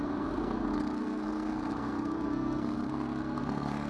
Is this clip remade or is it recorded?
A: remade